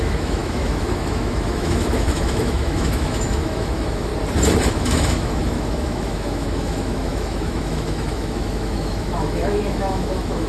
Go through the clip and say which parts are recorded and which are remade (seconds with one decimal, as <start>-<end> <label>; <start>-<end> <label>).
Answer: 0.0-4.1 remade; 4.1-4.7 recorded; 4.7-10.5 remade